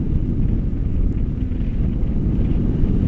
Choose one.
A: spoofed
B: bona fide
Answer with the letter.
B